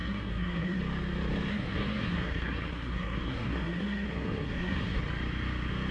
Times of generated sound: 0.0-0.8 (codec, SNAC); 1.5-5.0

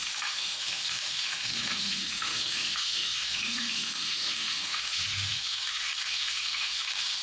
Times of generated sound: 0.0-7.2 (autoencoder, DAC-VAE)